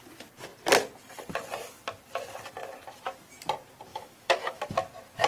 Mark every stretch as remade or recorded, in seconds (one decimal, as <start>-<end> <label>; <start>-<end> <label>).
0.0-3.9 recorded; 3.9-4.6 remade; 4.6-5.3 recorded